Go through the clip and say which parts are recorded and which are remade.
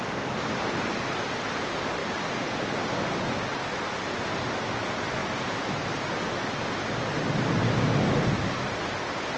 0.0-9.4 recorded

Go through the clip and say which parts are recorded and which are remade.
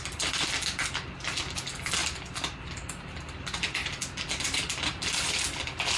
0.0-6.0 recorded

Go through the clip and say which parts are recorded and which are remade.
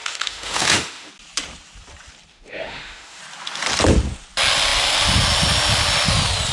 0.0-1.1 remade; 1.1-2.3 recorded; 2.3-3.2 remade; 3.2-6.5 recorded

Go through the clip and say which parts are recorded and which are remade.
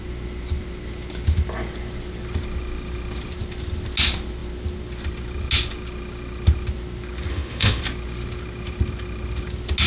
0.0-7.3 recorded; 7.3-7.8 remade; 7.8-9.9 recorded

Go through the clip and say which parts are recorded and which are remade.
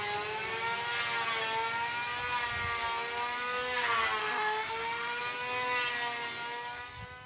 0.0-4.2 recorded; 4.2-5.2 remade; 5.2-7.3 recorded